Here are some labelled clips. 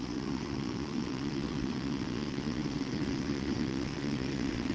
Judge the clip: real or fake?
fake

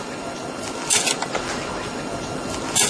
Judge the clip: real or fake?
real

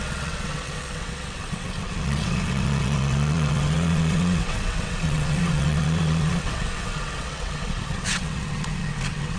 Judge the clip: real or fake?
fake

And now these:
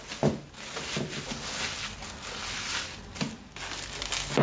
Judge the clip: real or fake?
real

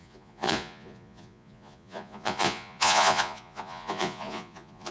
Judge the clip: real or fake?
fake